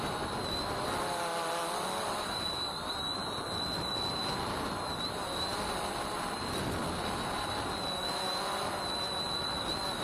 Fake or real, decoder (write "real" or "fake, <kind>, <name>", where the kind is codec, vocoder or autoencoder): real